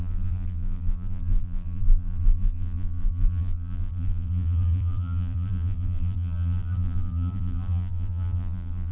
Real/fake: fake